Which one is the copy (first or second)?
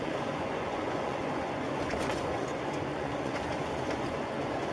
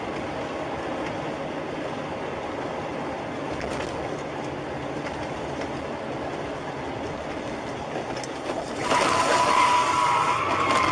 first